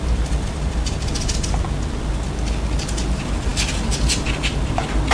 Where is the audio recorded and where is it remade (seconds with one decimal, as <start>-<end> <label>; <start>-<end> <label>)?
0.0-5.1 recorded